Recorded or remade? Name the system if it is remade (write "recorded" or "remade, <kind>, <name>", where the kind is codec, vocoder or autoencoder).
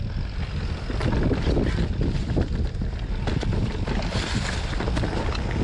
recorded